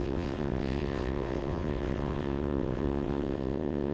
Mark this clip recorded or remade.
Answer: remade